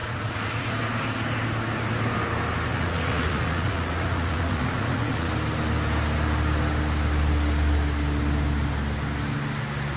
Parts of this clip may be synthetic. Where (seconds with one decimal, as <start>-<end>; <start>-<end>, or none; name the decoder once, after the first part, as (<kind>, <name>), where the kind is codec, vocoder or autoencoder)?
0.0-0.7 (vocoder, Vocos); 2.7-5.3